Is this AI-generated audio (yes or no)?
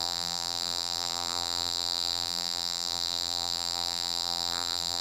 yes